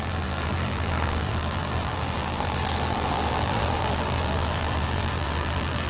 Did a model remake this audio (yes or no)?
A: yes